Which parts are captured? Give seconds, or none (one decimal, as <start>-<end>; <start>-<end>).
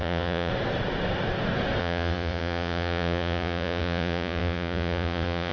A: 0.5-1.8